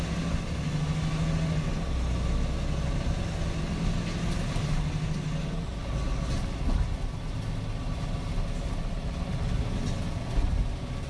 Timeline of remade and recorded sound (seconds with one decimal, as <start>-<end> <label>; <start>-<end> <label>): 0.0-11.1 recorded